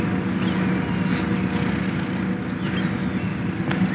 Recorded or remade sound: recorded